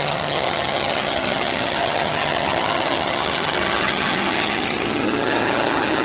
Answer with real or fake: fake